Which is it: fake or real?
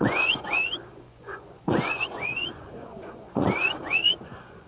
fake